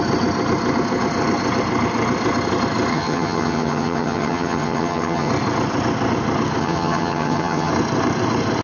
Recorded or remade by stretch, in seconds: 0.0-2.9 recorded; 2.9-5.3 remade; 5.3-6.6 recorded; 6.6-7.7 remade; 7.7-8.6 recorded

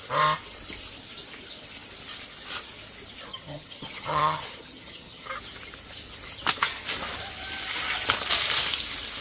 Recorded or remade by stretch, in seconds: 0.0-3.3 recorded; 3.3-5.3 remade; 5.3-9.2 recorded

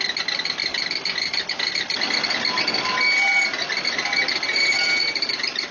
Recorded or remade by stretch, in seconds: 0.0-5.7 recorded

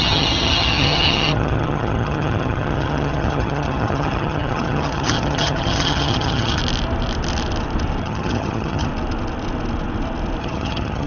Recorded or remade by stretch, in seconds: 0.0-6.6 remade; 6.6-8.0 recorded; 8.0-8.9 remade; 8.9-10.4 recorded; 10.4-11.1 remade

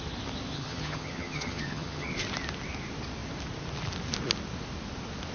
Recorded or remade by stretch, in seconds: 0.0-0.5 recorded; 0.5-2.1 remade; 2.1-5.3 recorded

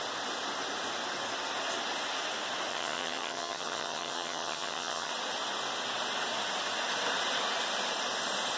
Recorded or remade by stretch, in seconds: 0.0-2.7 recorded; 2.7-5.1 remade; 5.1-8.6 recorded

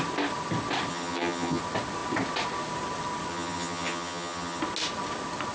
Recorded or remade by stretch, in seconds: 0.0-0.9 recorded; 0.9-1.6 remade; 1.6-3.3 recorded; 3.3-4.6 remade; 4.6-5.5 recorded